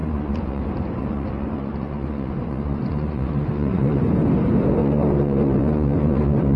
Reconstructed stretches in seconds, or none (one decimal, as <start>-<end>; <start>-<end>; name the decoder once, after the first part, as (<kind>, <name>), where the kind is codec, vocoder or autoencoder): 0.0-0.6 (vocoder, Vocos); 1.0-4.0; 4.8-6.6